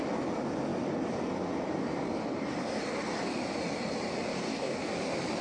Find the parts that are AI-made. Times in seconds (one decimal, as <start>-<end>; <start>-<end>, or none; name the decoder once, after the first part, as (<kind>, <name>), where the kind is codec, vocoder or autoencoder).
4.3-4.9 (codec, DAC)